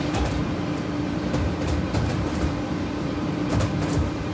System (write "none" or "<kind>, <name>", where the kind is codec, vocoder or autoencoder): vocoder, BigVGAN v2